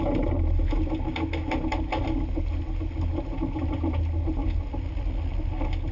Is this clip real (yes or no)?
yes